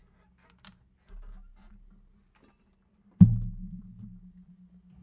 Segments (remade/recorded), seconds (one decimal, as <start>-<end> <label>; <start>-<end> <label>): 0.0-1.5 recorded; 1.5-4.5 remade; 4.5-5.0 recorded